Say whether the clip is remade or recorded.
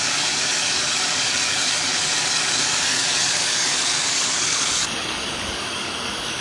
remade